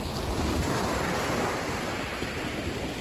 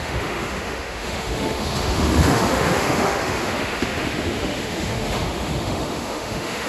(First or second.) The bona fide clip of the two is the first